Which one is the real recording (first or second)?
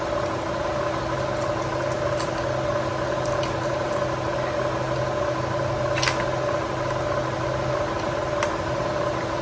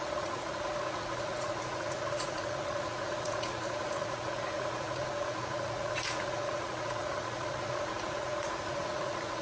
first